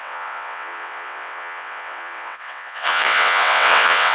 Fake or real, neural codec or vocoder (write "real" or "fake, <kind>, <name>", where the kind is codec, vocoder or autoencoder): fake, vocoder, WaveNeXt